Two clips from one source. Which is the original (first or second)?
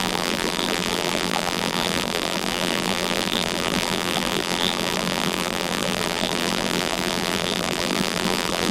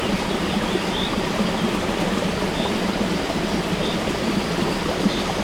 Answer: second